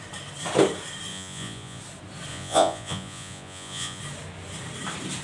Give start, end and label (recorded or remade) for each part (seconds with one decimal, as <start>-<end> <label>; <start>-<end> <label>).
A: 0.0-1.1 recorded; 1.1-1.8 remade; 1.8-2.3 recorded; 2.3-4.0 remade; 4.0-5.2 recorded